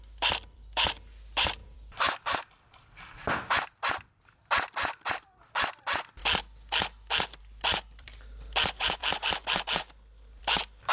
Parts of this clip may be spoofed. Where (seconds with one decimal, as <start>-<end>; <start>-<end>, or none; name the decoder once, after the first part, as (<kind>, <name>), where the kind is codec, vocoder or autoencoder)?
0.0-6.2 (vocoder, BigVGAN v2); 7.4-9.0; 10.4-10.9